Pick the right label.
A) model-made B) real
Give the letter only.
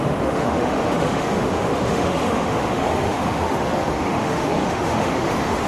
A